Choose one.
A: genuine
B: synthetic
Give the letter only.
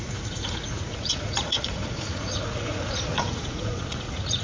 B